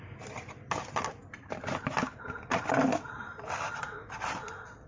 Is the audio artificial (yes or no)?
no